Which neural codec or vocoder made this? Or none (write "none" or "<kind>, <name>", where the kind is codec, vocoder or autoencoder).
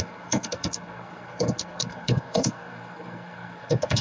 codec, SNAC